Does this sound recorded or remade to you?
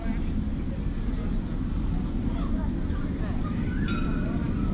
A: recorded